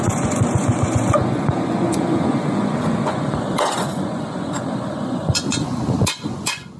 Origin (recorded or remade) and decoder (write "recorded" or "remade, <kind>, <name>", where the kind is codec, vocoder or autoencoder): remade, vocoder, Vocos